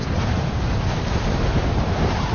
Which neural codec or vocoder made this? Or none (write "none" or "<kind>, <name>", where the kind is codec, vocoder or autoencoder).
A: none